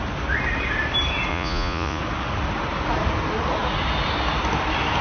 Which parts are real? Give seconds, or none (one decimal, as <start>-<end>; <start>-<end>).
0.0-1.3; 2.0-5.0